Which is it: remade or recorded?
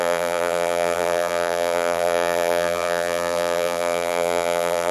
remade